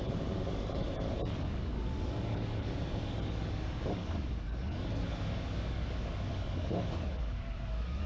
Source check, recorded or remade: remade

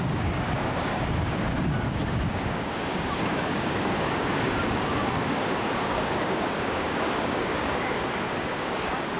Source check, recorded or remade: remade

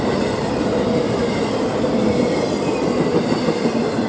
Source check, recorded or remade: recorded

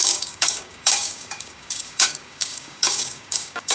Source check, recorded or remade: remade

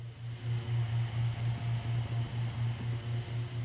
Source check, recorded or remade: recorded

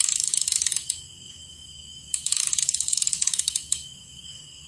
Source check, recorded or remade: remade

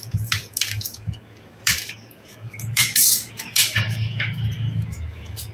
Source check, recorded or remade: remade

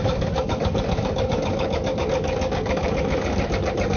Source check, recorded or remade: remade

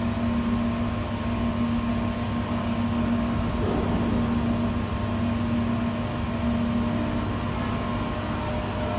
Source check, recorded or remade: recorded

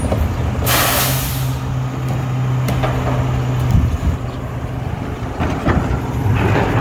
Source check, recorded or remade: recorded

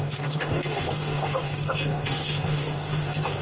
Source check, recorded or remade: remade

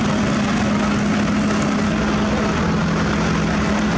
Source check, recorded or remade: recorded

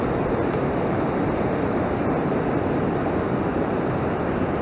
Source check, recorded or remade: recorded